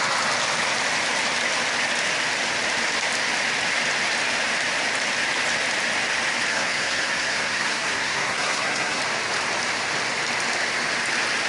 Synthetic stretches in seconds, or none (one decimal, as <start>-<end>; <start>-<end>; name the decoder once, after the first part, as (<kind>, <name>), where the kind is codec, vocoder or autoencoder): 6.5-9.0 (codec, SNAC)